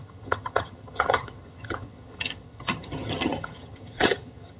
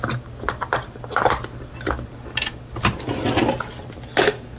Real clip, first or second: second